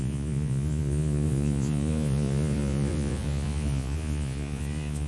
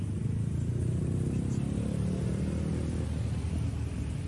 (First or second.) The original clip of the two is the second